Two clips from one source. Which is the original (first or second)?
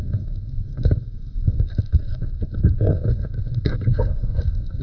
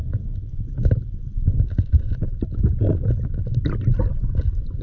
second